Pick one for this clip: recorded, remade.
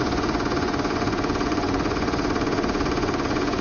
remade